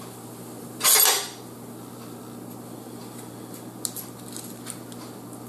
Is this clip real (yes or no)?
yes